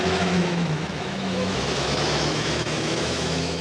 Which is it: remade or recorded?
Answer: remade